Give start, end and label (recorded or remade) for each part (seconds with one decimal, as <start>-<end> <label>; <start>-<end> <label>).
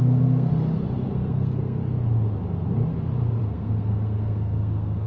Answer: 0.0-0.5 remade; 0.5-1.1 recorded; 1.1-1.8 remade; 1.8-3.4 recorded; 3.4-5.1 remade